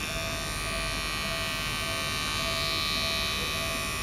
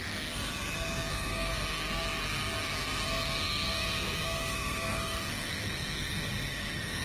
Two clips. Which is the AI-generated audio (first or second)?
second